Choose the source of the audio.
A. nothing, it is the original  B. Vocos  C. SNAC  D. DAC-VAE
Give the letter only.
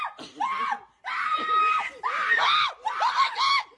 A